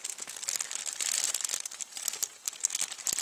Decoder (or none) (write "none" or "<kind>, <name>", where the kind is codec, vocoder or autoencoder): none